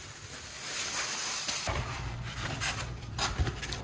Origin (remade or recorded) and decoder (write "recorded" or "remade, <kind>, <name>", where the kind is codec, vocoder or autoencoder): remade, vocoder, BigVGAN v2